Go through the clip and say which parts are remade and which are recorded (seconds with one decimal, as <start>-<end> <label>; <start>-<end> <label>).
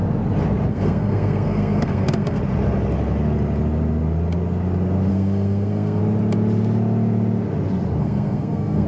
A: 0.0-0.7 recorded; 0.7-2.4 remade; 2.4-5.1 recorded; 5.1-6.0 remade; 6.0-8.0 recorded; 8.0-8.9 remade